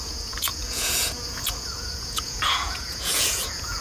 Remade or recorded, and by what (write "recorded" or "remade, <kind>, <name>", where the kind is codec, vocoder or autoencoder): remade, vocoder, Vocos